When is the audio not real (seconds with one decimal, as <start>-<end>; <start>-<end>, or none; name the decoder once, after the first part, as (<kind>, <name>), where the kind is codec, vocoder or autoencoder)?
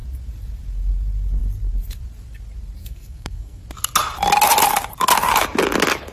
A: 2.8-3.6 (codec, SNAC)